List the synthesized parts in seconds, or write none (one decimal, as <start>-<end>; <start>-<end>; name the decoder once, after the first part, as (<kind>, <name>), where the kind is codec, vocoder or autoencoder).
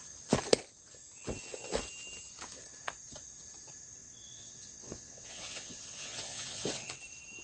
4.0-7.0 (vocoder, WaveNeXt)